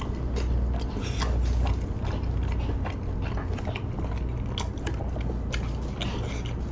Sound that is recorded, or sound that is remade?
recorded